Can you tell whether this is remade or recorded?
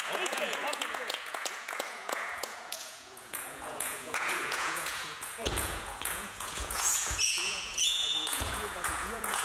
remade